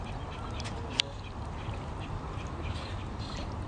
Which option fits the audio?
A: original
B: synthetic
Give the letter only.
A